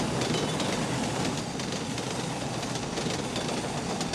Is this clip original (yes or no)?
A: yes